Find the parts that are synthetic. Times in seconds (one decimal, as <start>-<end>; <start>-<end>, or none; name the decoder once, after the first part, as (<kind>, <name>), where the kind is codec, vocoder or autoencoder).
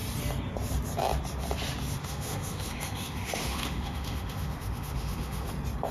2.0-5.5 (autoencoder, DAC-VAE)